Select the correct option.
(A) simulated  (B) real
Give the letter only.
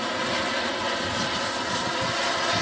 B